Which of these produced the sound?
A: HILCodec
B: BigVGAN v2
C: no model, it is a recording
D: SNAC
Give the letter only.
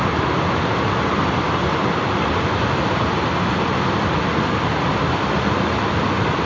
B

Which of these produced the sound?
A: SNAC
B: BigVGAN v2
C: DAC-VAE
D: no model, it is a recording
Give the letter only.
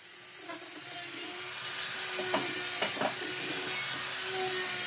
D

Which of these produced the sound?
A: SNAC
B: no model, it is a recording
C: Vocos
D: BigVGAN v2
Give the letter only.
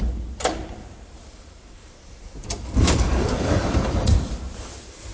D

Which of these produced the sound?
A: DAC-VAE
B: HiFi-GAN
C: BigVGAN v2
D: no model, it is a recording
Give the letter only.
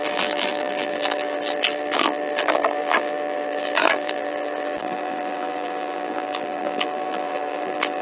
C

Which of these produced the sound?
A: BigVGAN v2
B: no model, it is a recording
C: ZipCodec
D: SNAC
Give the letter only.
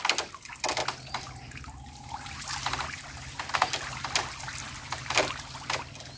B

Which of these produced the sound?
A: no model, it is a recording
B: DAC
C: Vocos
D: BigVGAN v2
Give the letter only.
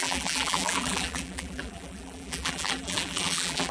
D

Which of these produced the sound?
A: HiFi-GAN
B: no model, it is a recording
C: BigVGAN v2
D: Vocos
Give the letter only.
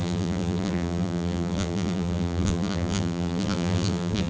C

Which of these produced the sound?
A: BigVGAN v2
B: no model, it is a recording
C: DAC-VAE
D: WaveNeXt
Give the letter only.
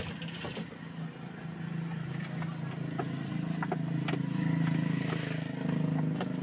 B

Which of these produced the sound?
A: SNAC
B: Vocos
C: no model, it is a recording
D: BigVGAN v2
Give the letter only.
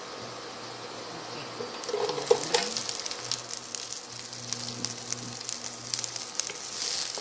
C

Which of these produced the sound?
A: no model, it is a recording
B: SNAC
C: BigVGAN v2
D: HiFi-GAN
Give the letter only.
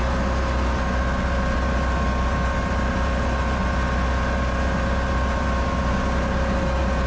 A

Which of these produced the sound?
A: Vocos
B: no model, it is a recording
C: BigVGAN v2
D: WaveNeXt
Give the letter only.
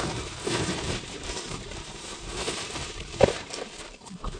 C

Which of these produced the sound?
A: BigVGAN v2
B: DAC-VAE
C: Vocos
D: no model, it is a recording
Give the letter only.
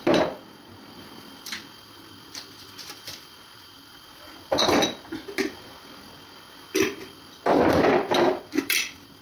A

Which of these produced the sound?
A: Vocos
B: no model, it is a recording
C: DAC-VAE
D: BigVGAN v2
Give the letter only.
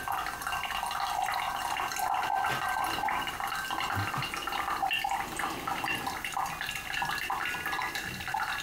B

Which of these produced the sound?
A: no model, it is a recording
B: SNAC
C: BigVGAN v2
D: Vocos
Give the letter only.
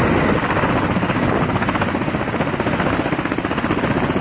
A